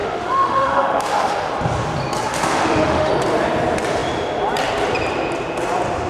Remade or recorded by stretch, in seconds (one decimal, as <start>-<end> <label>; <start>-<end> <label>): 0.0-1.5 remade; 1.5-2.3 recorded; 2.3-3.1 remade; 3.1-6.1 recorded